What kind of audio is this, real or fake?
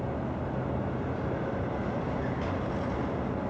real